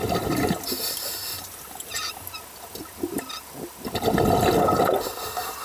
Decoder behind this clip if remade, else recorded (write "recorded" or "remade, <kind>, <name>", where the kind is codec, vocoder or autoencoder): recorded